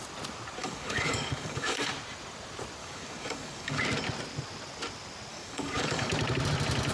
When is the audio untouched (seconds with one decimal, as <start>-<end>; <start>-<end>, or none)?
0.0-0.6; 1.9-2.8; 3.8-5.3; 6.1-6.9